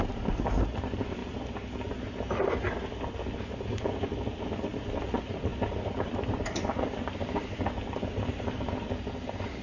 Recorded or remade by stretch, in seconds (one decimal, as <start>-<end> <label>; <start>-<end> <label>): 0.0-1.2 remade; 1.2-4.0 recorded; 4.0-9.6 remade